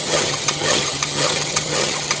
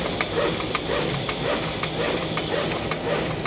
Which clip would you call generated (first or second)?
first